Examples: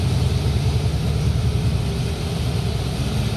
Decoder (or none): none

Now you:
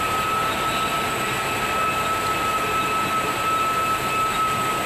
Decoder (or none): none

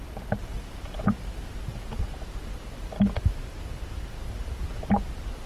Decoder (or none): vocoder, BigVGAN v2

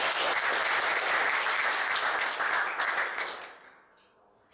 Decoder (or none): none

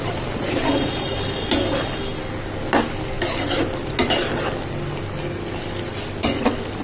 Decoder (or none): none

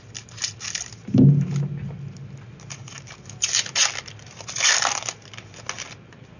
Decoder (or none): none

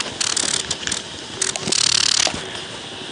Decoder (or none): none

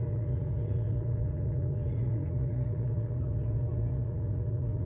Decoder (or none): vocoder, Vocos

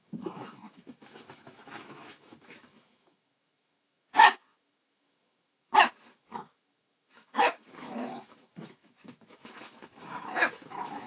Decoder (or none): autoencoder, DAC-VAE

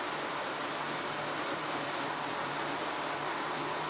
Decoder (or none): vocoder, BigVGAN v2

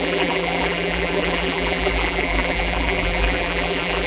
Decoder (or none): vocoder, BigVGAN v2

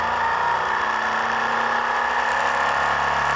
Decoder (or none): none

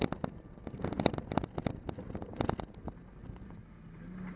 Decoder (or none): none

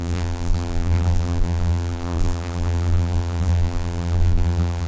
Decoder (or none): vocoder, BigVGAN v2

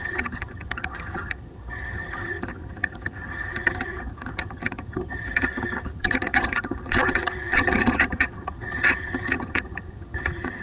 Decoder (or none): vocoder, HiFi-GAN